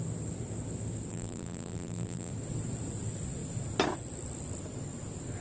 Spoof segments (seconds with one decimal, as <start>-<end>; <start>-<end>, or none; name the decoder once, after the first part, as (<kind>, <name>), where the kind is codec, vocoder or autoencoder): 1.1-2.3 (vocoder, BigVGAN v2)